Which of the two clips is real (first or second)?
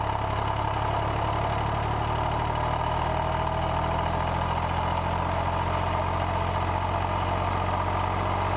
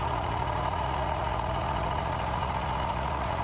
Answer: first